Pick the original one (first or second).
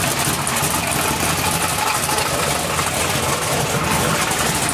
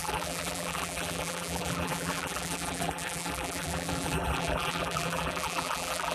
first